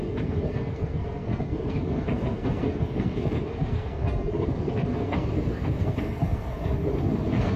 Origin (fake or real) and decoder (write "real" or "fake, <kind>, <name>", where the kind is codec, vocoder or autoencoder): fake, codec, SNAC